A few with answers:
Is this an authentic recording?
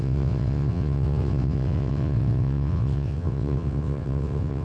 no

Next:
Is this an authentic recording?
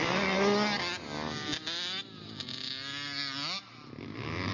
yes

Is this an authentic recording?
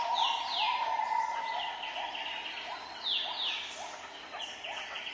yes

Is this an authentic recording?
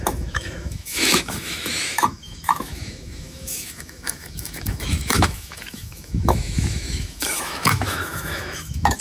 no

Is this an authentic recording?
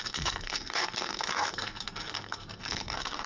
no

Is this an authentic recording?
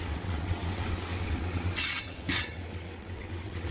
no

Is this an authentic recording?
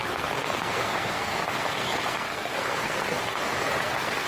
no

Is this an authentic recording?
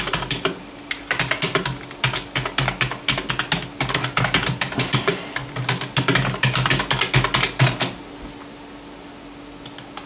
yes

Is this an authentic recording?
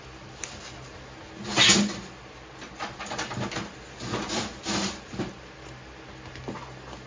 yes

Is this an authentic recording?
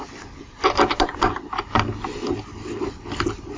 yes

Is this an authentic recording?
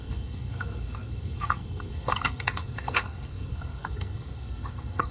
no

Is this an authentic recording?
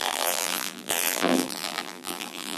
no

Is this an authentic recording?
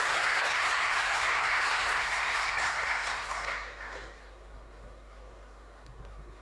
no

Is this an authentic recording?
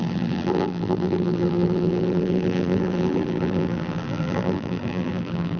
no